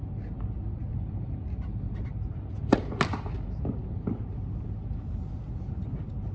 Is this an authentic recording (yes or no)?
yes